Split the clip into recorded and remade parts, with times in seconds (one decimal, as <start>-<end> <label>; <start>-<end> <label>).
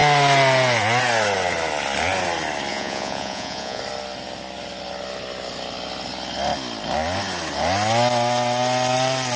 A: 0.0-2.7 recorded; 2.7-3.8 remade; 3.8-9.4 recorded